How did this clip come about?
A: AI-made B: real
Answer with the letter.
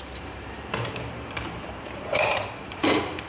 A